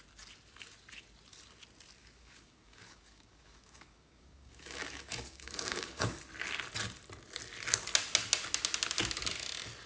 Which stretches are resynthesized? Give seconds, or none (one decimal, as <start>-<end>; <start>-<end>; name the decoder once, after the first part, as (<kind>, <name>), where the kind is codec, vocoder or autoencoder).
2.0-6.2 (codec, DAC)

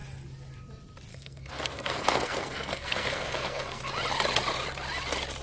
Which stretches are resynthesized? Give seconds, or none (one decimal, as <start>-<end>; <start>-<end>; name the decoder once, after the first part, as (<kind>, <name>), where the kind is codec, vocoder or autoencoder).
1.1-3.8 (codec, SNAC)

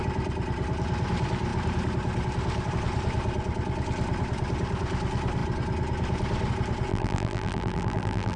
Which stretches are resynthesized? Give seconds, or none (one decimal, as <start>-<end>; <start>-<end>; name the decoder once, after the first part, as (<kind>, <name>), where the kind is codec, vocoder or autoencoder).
6.9-8.4 (vocoder, BigVGAN v2)

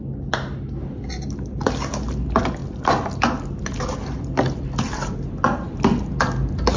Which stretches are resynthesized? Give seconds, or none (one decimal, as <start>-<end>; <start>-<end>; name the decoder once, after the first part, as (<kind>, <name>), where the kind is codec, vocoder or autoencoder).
none

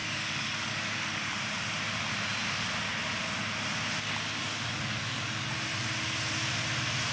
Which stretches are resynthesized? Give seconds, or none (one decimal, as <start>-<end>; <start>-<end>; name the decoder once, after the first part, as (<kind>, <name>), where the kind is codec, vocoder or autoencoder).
0.0-1.4 (codec, DAC); 4.4-5.5

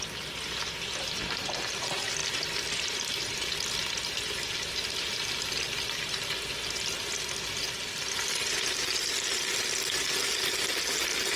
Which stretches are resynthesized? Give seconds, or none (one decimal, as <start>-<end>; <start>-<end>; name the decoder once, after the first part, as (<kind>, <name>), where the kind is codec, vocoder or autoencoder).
2.2-3.2 (vocoder, BigVGAN v2)

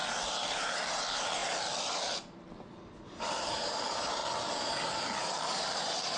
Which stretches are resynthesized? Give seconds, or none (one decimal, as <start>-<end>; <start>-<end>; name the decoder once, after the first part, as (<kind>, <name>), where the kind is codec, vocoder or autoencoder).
0.6-1.4 (vocoder, BigVGAN v2); 3.3-4.2; 5.2-6.2

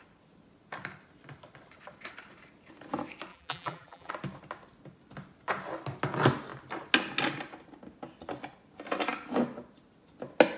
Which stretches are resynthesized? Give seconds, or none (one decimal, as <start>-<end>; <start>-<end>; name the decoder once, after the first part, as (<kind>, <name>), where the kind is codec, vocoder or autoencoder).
3.3-4.1 (vocoder, BigVGAN v2)